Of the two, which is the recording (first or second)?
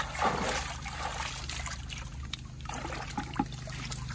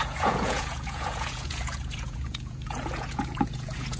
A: first